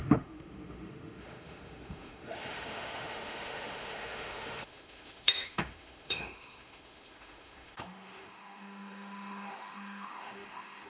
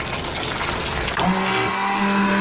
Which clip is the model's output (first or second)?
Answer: first